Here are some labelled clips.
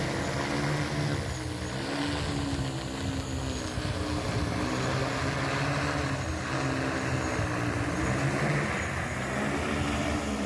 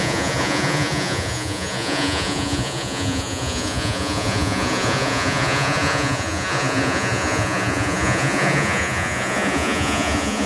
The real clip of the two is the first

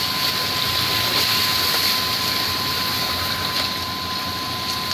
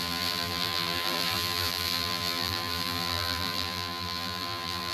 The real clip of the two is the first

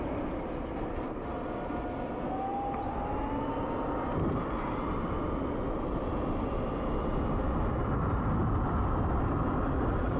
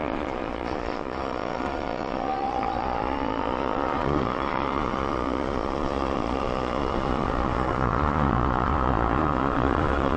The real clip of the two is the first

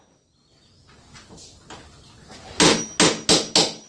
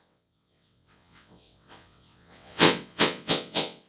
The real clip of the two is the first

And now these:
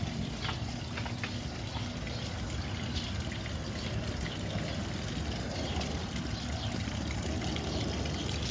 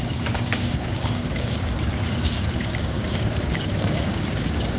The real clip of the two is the first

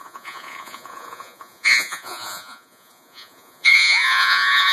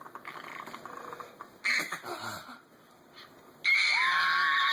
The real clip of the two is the second